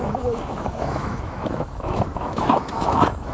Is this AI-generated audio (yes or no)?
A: yes